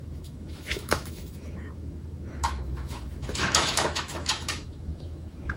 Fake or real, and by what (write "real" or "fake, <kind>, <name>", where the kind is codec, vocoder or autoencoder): fake, autoencoder, DAC-VAE